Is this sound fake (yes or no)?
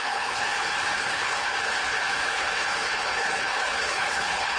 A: yes